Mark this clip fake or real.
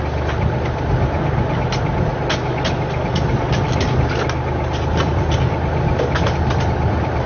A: real